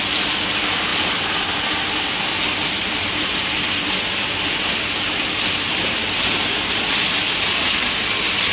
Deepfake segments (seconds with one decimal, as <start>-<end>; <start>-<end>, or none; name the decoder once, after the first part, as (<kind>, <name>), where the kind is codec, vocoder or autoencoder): none